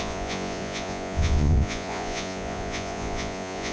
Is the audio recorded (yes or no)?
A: no